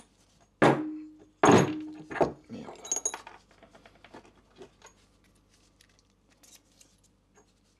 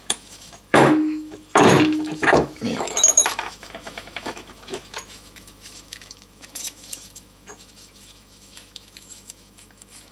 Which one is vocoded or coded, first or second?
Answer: second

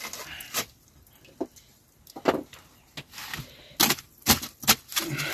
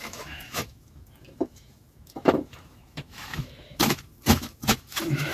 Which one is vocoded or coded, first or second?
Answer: second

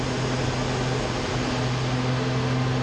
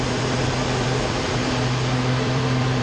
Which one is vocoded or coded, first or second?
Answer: second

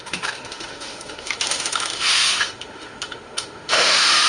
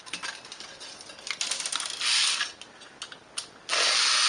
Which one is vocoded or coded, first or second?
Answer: first